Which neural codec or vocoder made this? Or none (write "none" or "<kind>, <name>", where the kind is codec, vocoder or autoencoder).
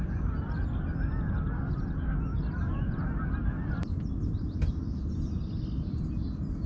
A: none